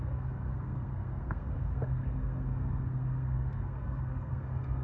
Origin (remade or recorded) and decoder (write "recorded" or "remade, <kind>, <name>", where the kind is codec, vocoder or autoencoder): remade, codec, SNAC